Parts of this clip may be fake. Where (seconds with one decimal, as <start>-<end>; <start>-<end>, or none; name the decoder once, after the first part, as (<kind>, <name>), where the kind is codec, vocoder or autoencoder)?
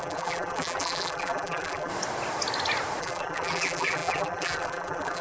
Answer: 0.0-1.9 (vocoder, BigVGAN v2); 3.0-5.2